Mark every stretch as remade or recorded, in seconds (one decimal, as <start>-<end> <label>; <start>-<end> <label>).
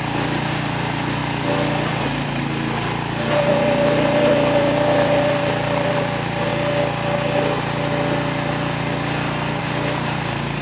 0.0-1.2 remade; 1.2-1.9 recorded; 1.9-6.5 remade; 6.5-9.6 recorded; 9.6-10.6 remade